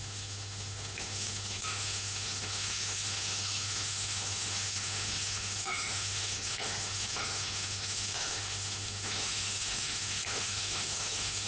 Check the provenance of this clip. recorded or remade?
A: remade